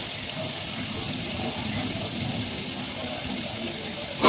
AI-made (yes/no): no